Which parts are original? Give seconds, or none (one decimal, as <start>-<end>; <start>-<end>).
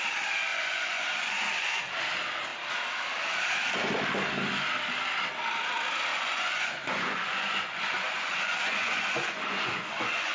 0.0-0.5; 1.8-6.1